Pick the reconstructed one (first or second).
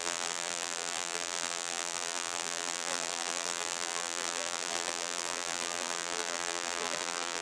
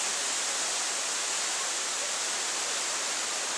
first